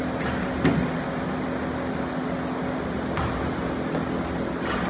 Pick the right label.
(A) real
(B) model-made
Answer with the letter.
A